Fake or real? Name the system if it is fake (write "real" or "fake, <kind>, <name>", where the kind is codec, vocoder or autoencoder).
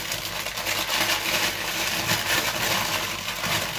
real